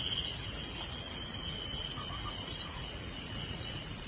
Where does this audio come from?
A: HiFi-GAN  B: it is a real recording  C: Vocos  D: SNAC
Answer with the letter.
C